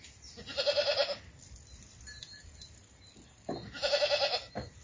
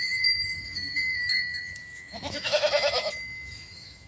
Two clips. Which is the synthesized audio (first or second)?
second